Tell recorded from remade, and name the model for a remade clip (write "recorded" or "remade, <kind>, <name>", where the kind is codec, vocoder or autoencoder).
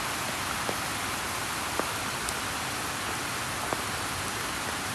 recorded